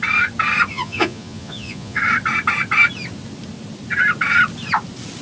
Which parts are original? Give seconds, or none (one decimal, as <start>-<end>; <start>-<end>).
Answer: 0.0-0.7; 2.0-5.2